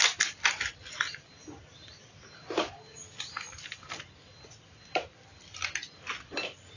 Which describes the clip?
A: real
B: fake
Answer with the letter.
A